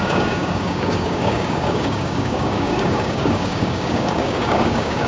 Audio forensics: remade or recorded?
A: remade